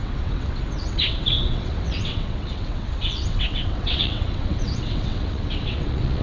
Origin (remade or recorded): remade